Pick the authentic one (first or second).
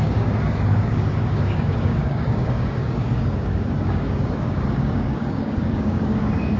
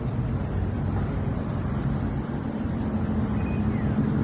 second